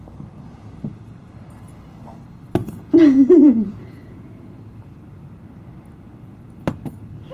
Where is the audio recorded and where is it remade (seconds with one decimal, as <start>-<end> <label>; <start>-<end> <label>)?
0.0-2.6 recorded; 2.6-4.6 remade; 4.6-7.3 recorded